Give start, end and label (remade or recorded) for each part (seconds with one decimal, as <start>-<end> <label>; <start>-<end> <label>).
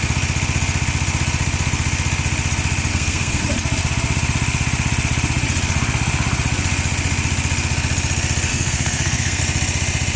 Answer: 0.0-2.9 recorded; 2.9-3.4 remade; 3.4-8.5 recorded; 8.5-9.4 remade; 9.4-10.2 recorded